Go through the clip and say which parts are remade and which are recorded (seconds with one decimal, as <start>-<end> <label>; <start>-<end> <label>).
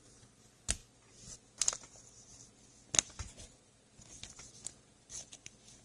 0.0-5.8 recorded